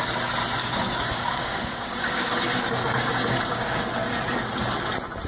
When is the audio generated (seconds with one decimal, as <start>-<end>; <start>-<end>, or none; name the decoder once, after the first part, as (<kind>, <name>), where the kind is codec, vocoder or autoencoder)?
0.6-3.8 (codec, DAC)